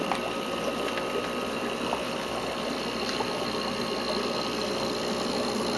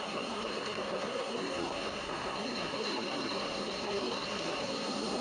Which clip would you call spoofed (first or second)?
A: second